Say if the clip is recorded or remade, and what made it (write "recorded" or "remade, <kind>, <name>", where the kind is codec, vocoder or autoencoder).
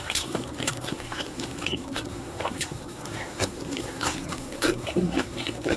remade, codec, SNAC